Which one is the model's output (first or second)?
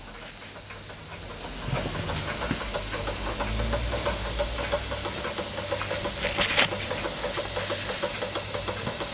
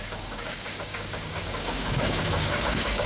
second